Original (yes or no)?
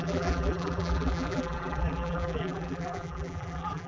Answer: no